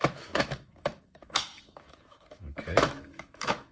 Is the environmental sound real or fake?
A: fake